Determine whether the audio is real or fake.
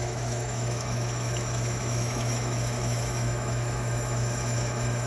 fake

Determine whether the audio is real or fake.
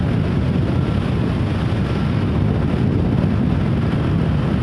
real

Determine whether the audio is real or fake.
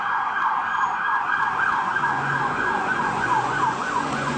fake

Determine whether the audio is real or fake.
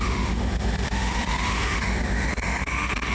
fake